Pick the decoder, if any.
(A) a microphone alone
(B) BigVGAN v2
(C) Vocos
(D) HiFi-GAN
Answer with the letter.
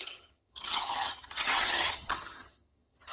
D